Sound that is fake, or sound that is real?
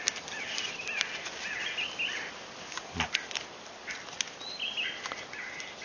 real